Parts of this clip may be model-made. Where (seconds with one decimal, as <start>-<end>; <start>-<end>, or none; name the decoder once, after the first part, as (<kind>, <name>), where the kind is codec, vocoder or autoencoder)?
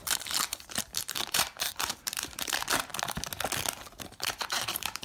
0.0-2.9 (vocoder, BigVGAN v2); 4.1-5.0